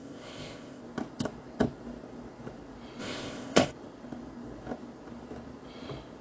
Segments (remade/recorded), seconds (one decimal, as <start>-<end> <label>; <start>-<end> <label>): 0.0-0.8 remade; 0.8-3.0 recorded; 3.0-3.7 remade; 3.7-6.2 recorded